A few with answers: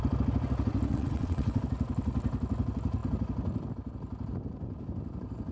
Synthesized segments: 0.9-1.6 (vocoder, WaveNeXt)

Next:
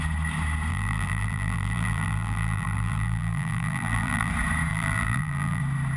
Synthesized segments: 0.7-4.3 (vocoder, BigVGAN v2); 4.7-5.6

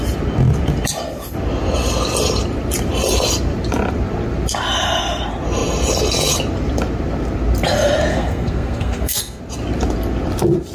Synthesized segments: 8.1-9.4 (codec, SNAC)

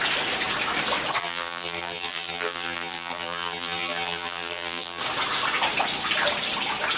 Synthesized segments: 1.2-5.0 (vocoder, BigVGAN v2)

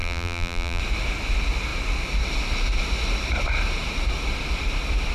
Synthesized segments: 0.0-0.8 (vocoder, BigVGAN v2)